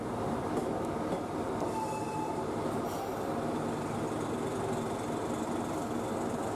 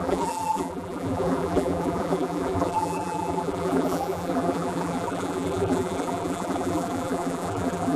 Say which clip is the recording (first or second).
first